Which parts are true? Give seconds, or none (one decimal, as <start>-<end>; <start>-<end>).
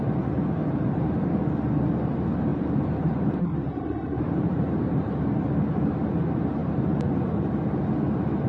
0.0-0.6; 1.3-2.5; 5.1-6.6; 7.7-8.5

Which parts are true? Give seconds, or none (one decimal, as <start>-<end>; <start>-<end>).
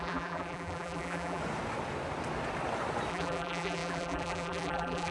1.4-3.1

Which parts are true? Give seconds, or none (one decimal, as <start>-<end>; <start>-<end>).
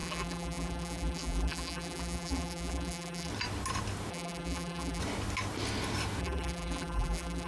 3.3-4.1; 5.0-6.2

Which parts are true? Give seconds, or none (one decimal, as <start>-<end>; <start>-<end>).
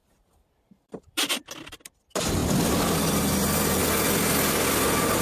1.2-5.2